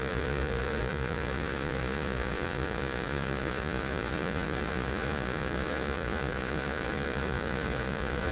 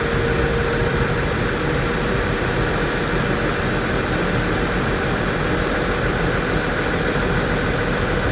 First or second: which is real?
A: second